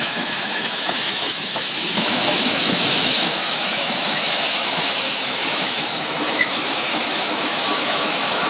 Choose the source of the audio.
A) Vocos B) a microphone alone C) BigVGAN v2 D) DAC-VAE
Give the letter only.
D